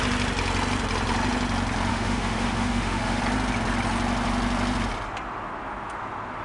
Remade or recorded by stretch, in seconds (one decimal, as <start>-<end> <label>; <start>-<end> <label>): 0.0-1.9 recorded; 1.9-3.2 remade; 3.2-6.4 recorded